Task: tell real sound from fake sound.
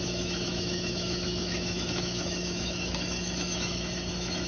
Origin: fake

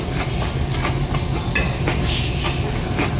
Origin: real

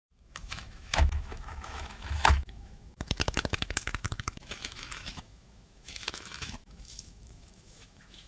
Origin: fake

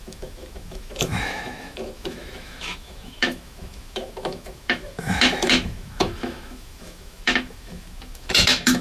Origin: fake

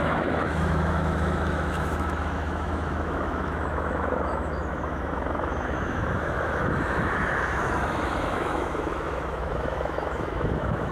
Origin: fake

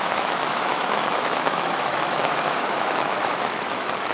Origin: fake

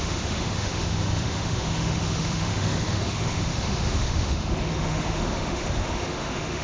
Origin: fake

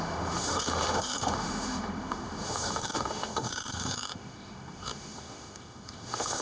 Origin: fake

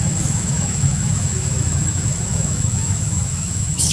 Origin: fake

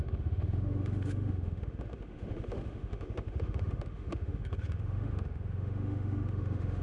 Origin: fake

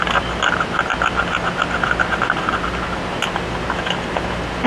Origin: real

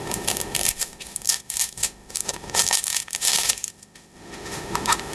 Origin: fake